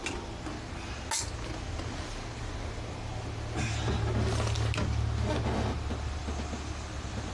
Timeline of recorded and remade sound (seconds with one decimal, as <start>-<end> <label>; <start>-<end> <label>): 0.0-7.3 recorded